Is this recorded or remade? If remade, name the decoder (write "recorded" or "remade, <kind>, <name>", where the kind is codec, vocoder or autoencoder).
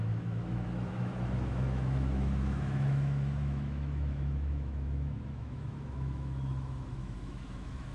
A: remade, autoencoder, DAC-VAE